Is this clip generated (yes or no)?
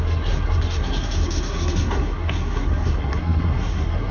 yes